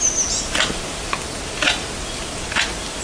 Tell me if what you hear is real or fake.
real